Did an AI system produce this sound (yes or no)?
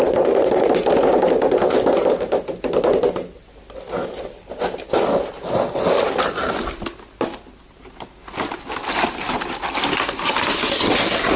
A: no